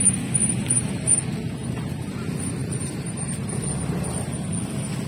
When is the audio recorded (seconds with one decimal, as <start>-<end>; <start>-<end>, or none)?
0.0-0.4; 1.1-1.6; 2.1-2.6; 3.7-5.1

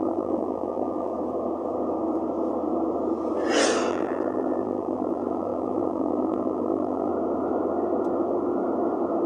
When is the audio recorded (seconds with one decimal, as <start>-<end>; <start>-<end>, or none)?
1.1-3.9; 7.1-9.3

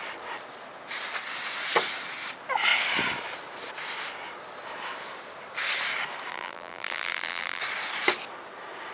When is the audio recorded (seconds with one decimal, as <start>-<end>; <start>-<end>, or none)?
0.0-6.3; 7.6-8.9